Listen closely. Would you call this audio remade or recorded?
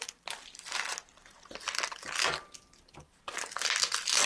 recorded